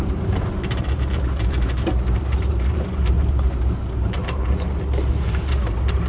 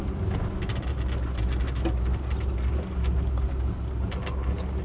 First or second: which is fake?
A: first